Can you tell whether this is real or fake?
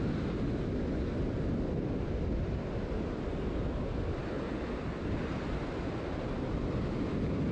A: real